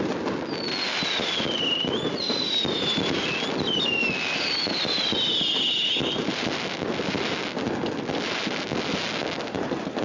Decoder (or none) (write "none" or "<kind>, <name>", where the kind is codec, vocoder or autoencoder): none